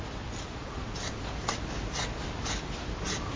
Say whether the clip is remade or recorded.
recorded